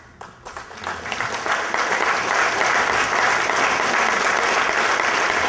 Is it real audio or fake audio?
real